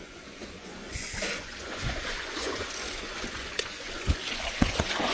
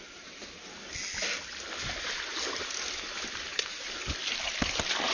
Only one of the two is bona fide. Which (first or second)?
second